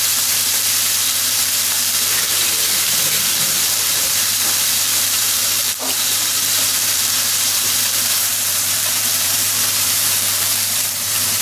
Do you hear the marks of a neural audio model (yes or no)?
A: yes